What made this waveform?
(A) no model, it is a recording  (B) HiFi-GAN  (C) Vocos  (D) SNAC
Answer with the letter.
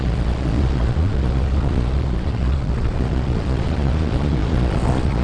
C